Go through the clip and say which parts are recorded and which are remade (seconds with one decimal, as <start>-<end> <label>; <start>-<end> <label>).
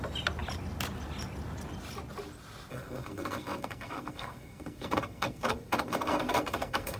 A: 0.0-2.7 recorded; 2.7-7.0 remade